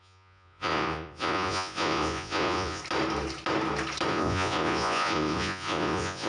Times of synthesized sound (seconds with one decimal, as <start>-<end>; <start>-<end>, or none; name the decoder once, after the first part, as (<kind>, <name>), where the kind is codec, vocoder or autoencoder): 0.0-2.8 (vocoder, Vocos); 4.1-6.3